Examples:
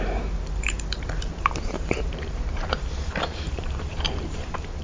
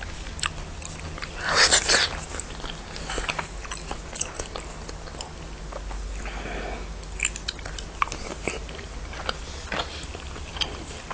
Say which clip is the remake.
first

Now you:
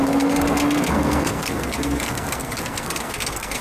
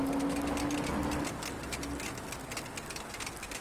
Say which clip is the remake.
first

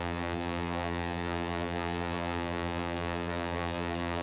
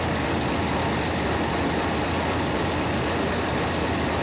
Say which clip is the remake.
first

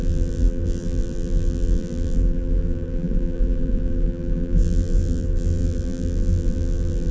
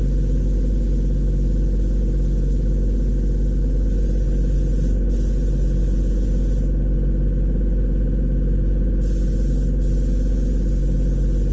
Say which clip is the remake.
first